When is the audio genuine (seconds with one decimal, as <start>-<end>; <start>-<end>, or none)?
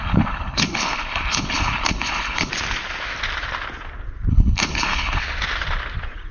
2.5-4.3; 5.2-6.3